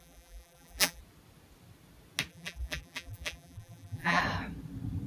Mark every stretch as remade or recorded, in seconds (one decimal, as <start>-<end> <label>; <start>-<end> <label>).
0.0-1.0 remade; 1.0-2.3 recorded; 2.3-4.2 remade; 4.2-5.1 recorded

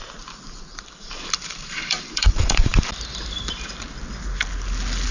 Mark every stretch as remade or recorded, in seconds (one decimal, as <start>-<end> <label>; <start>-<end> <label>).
0.0-0.7 recorded; 0.7-3.7 remade; 3.7-5.1 recorded

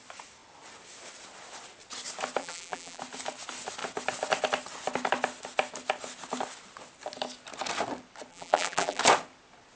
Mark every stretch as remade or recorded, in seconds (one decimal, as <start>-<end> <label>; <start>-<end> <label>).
0.0-2.4 recorded; 2.4-3.0 remade; 3.0-8.3 recorded; 8.3-9.0 remade; 9.0-9.8 recorded